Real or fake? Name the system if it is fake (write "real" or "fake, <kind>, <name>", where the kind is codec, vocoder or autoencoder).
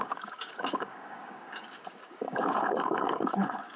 fake, codec, DAC